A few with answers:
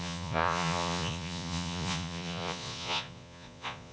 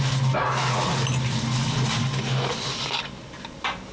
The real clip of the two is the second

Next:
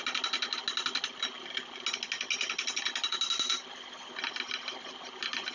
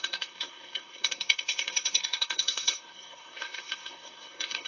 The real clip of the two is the first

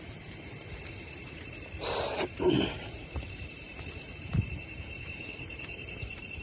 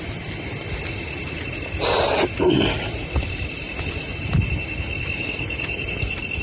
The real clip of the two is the second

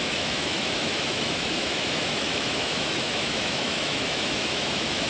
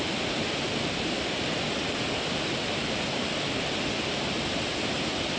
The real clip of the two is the second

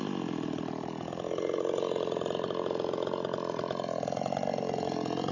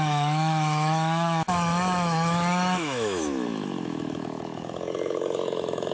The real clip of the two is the first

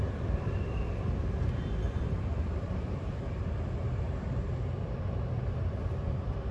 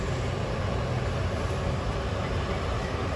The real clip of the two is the second